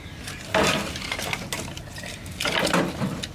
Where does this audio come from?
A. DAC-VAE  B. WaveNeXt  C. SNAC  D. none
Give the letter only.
D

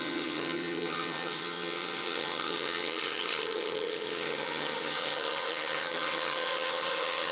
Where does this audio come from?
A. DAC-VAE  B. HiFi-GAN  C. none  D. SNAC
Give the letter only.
B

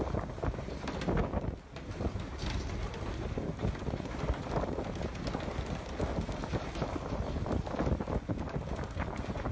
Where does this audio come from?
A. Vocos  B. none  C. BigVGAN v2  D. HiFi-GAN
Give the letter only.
B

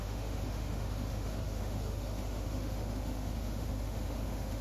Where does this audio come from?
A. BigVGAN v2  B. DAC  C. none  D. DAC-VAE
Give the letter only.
D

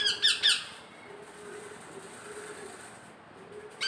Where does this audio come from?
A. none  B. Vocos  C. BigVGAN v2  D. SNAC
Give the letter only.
A